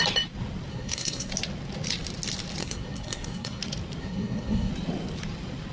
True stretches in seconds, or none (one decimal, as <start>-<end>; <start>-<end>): 0.0-0.7; 1.3-2.6; 3.6-4.0; 4.7-5.7